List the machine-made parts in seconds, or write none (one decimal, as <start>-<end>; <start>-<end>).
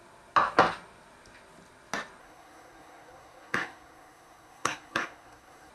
2.2-5.7